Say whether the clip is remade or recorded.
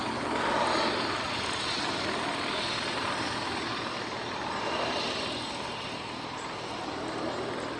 recorded